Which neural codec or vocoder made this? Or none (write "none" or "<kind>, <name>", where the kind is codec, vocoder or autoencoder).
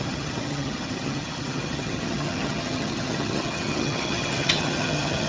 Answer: vocoder, HiFi-GAN